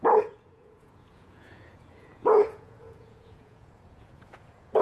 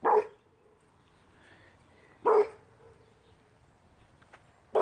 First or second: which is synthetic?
first